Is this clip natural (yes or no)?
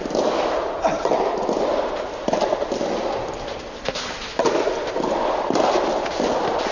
yes